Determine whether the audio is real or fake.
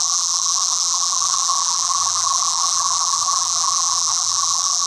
fake